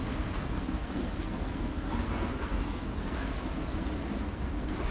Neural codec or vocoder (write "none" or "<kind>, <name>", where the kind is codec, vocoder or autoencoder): codec, SNAC